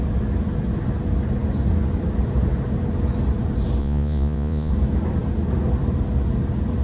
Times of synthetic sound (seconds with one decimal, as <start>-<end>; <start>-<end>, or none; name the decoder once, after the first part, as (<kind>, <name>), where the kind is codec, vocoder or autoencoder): 3.8-4.7 (vocoder, Vocos)